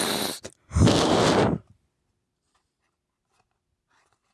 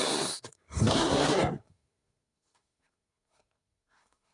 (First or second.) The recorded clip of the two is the first